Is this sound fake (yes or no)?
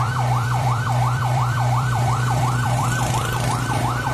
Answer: yes